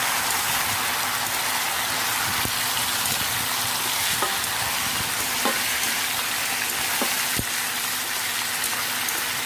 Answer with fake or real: real